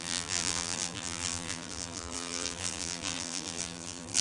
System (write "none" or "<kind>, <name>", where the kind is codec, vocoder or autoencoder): vocoder, BigVGAN v2